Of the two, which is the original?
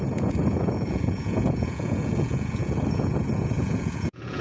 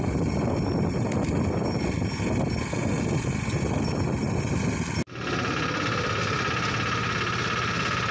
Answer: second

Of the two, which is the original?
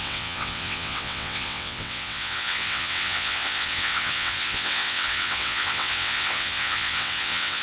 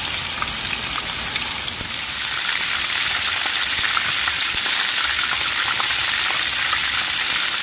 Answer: second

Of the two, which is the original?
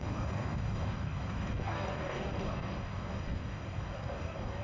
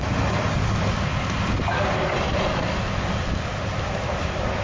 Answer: second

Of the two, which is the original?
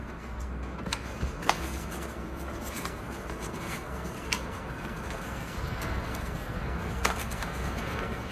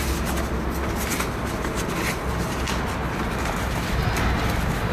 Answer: second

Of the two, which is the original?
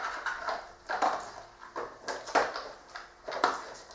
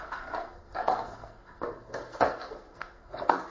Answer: first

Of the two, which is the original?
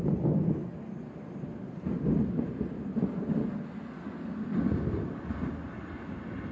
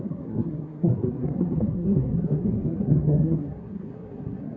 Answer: first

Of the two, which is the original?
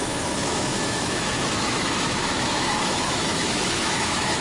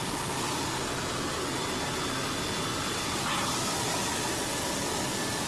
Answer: second